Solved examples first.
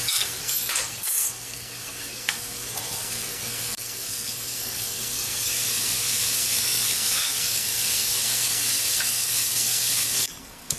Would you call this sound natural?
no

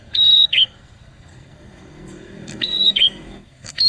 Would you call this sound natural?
no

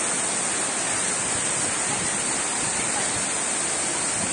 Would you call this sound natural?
yes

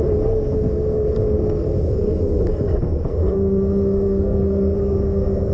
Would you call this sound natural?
no